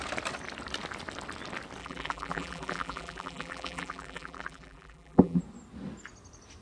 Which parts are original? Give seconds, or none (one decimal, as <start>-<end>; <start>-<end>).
0.0-1.8; 5.4-6.6